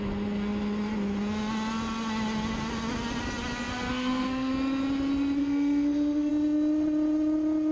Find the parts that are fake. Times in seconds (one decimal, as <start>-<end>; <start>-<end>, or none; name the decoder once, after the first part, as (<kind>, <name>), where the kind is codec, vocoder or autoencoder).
3.7-4.5 (codec, SNAC); 5.4-6.3